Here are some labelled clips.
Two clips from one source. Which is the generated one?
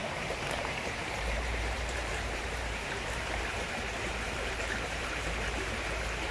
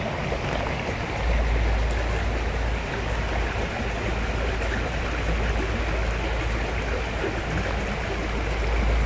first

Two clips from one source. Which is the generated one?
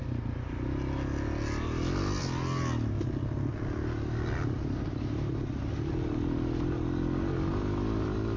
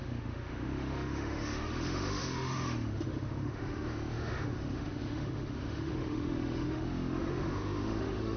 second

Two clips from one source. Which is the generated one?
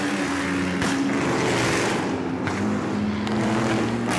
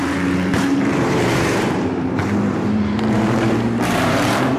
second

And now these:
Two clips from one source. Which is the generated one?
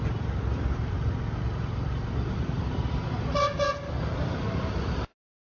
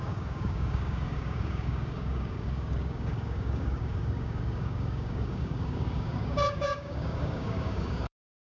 second